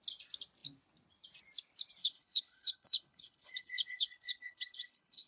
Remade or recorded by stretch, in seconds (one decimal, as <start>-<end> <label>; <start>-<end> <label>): 0.0-2.0 recorded; 2.0-5.3 remade